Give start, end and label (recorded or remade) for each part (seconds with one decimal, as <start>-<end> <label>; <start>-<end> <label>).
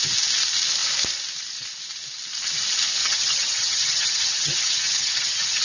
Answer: 0.0-3.0 recorded; 3.0-5.6 remade